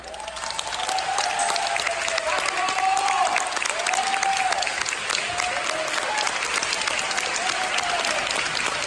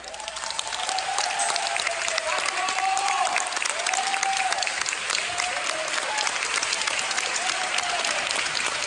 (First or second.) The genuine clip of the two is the first